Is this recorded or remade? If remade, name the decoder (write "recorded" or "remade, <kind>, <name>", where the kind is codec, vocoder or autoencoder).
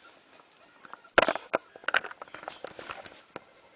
recorded